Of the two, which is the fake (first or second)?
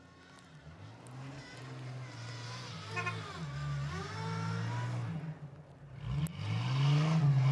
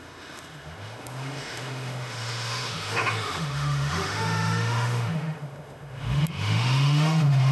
second